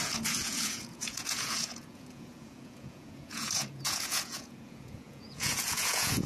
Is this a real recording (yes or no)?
no